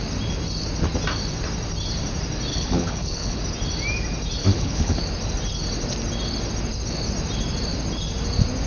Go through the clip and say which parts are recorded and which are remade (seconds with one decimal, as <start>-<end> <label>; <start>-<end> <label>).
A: 0.0-2.5 recorded; 2.5-3.4 remade; 3.4-4.4 recorded; 4.4-5.0 remade; 5.0-8.7 recorded